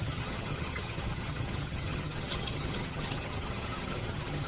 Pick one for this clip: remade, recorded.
remade